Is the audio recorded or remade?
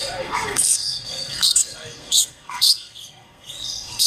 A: remade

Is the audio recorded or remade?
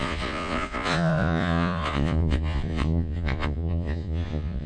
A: remade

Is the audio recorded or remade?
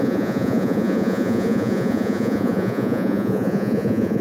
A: remade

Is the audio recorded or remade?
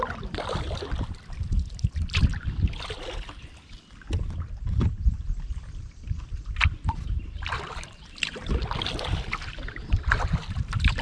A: remade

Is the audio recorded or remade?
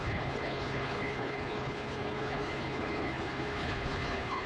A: remade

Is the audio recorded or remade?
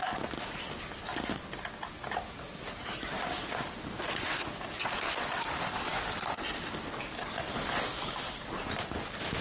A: recorded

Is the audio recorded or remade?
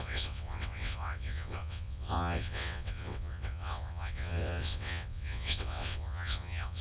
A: remade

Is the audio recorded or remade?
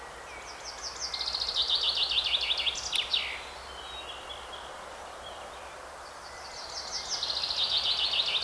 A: recorded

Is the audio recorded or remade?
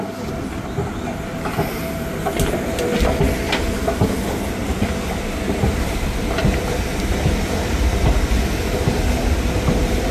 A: recorded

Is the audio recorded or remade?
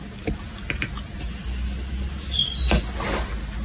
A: recorded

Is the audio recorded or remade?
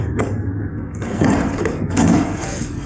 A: remade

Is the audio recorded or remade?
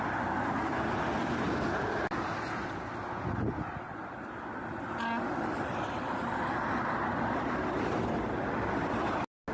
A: recorded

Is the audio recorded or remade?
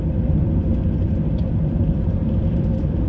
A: remade